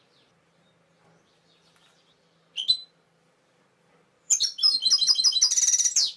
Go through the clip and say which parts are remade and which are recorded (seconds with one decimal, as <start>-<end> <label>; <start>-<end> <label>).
0.0-1.1 recorded; 1.1-4.6 remade; 4.6-6.2 recorded